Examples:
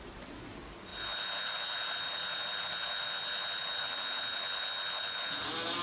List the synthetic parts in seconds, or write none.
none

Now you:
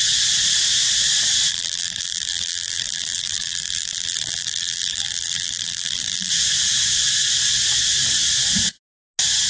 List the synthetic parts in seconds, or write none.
1.5-6.3 (vocoder, BigVGAN v2)

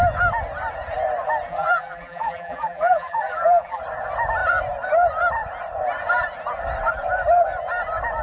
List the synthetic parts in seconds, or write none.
1.5-3.8 (vocoder, BigVGAN v2)

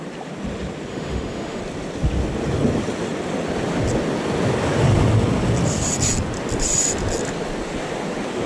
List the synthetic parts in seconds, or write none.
0.9-1.6 (autoencoder, DAC-VAE)

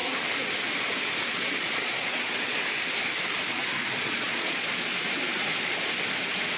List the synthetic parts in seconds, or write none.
1.3-2.5 (vocoder, Vocos); 3.5-4.9

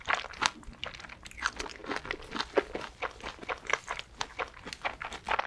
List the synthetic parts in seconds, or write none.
none

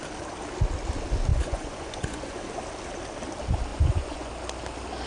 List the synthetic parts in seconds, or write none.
1.3-2.4 (vocoder, Vocos); 3.7-4.3